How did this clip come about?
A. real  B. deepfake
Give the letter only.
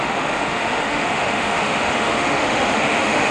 B